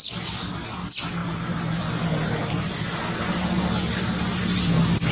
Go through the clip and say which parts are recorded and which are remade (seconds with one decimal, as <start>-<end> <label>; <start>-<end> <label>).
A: 0.0-5.1 recorded